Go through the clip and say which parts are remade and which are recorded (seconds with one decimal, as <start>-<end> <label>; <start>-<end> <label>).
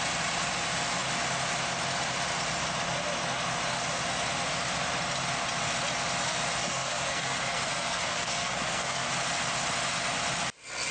0.0-6.6 recorded; 6.6-9.1 remade; 9.1-10.9 recorded